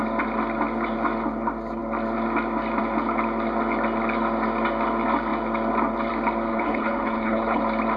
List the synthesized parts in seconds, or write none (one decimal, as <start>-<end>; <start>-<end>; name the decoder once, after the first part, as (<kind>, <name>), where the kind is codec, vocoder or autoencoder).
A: 6.5-7.6 (codec, HILCodec)